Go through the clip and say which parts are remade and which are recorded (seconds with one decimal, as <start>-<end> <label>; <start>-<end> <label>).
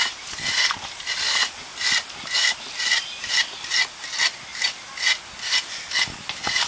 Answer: 0.0-6.7 recorded